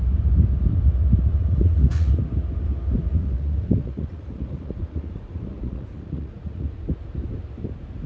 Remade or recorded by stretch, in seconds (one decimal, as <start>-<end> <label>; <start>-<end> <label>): 0.0-1.3 recorded; 1.3-2.1 remade; 2.1-3.1 recorded; 3.1-6.8 remade; 6.8-8.1 recorded